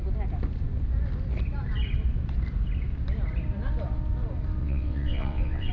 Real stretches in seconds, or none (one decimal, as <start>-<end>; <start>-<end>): 0.0-4.6